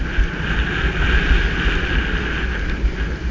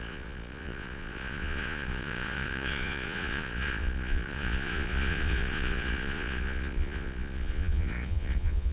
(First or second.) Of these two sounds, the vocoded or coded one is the second